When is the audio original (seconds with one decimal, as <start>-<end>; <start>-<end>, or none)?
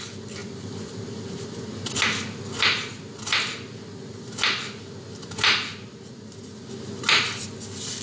0.0-8.0